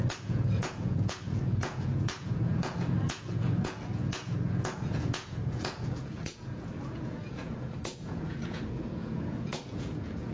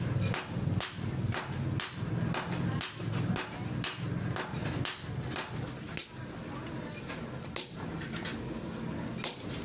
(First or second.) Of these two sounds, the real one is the second